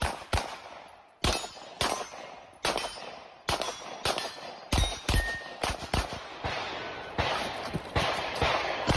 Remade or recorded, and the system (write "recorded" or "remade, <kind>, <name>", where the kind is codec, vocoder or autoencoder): recorded